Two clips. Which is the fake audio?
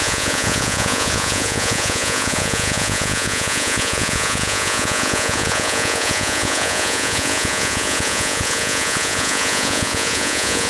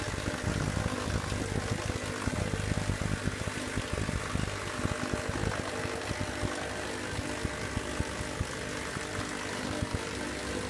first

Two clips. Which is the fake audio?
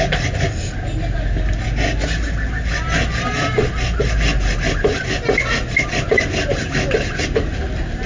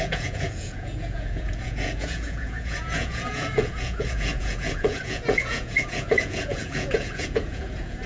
second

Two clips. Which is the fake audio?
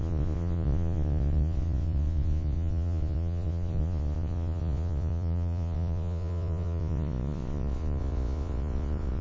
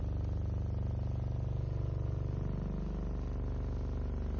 first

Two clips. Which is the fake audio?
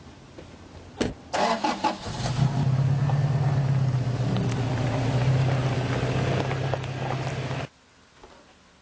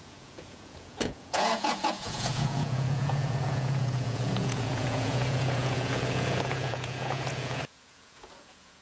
second